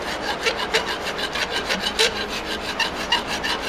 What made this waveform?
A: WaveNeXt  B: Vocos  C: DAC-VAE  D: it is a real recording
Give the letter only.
D